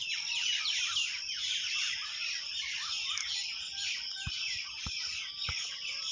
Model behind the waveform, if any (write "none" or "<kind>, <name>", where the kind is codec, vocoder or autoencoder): none